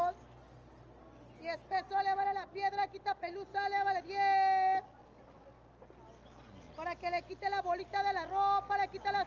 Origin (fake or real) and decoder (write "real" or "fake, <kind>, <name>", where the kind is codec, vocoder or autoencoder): real